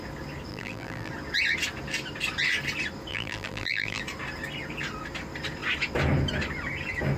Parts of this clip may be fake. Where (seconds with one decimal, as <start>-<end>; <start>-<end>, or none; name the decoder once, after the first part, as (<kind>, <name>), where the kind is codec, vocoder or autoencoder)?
0.5-1.1 (vocoder, BigVGAN v2); 3.1-4.0